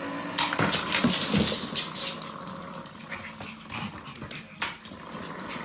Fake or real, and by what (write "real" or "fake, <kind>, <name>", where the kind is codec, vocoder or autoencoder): real